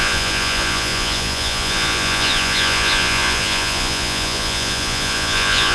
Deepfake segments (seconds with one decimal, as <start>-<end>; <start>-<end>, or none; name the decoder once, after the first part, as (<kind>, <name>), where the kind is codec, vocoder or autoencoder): 0.0-5.7 (vocoder, Vocos)